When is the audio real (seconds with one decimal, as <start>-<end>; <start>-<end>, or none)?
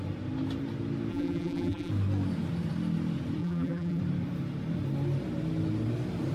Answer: 0.0-1.1; 1.9-3.4; 4.0-6.3